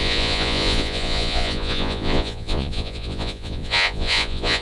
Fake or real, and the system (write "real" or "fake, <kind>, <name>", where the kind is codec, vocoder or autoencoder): fake, vocoder, Vocos